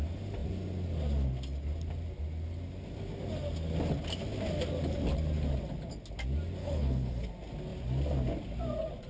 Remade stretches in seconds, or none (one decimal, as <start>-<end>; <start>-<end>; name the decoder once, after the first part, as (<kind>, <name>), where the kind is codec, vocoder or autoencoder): 6.6-7.3 (codec, HILCodec)